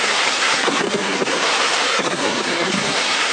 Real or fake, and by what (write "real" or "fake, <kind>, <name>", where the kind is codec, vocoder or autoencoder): fake, codec, SNAC